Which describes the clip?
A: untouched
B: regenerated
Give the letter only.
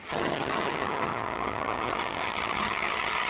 B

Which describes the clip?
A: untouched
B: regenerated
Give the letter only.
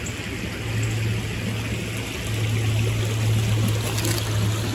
A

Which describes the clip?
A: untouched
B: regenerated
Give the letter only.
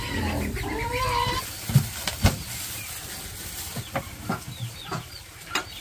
A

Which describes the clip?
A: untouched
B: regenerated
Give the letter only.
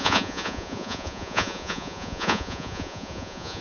B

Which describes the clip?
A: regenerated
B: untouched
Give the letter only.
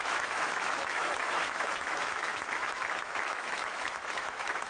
A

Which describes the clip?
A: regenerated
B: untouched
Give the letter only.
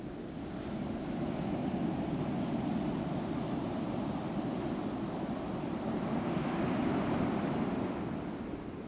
B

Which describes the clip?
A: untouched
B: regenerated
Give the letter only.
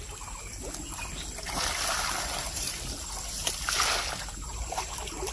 A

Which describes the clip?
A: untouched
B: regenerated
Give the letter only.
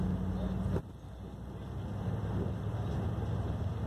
A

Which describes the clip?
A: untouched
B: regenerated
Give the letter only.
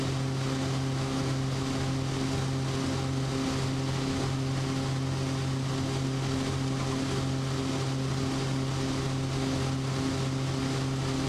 A